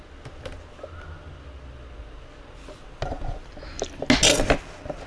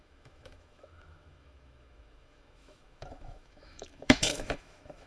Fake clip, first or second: second